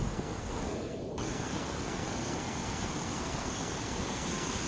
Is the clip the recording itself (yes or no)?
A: no